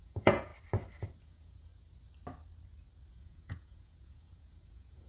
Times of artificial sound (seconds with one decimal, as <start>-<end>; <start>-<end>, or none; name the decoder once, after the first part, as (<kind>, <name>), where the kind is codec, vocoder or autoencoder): 0.0-0.5 (vocoder, Vocos); 1.2-1.7; 3.1-5.1